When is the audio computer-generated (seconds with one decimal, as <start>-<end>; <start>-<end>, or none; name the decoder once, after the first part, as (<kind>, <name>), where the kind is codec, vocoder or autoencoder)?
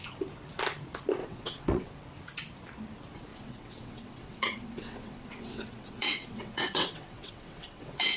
1.2-1.9 (vocoder, WaveNeXt); 3.3-8.2